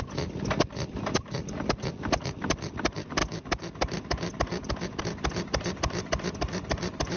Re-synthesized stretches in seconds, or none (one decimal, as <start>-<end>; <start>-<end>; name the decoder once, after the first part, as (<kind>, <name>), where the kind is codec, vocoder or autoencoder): none